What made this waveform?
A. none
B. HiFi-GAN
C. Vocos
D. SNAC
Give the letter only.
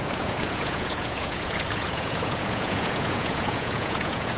C